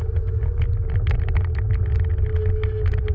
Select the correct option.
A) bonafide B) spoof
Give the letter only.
A